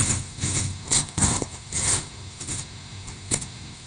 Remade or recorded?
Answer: remade